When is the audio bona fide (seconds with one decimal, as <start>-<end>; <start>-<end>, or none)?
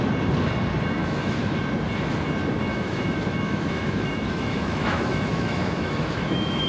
0.0-1.0; 1.6-2.7